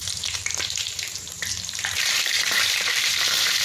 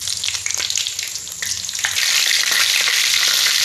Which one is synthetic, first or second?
first